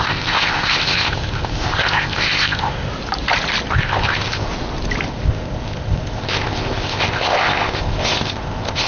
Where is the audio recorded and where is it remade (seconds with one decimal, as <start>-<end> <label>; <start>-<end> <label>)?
0.0-2.9 remade; 2.9-3.7 recorded; 3.7-4.5 remade; 4.5-5.1 recorded; 5.1-8.9 remade